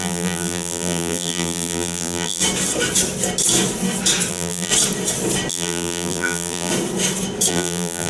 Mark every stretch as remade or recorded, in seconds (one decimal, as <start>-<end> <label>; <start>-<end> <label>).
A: 0.0-2.4 remade; 2.4-4.3 recorded; 4.3-4.7 remade; 4.7-5.5 recorded; 5.5-6.7 remade; 6.7-7.5 recorded; 7.5-8.1 remade